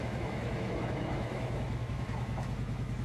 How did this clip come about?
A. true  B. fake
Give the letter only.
B